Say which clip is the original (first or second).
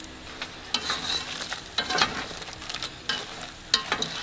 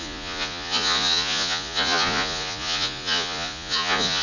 first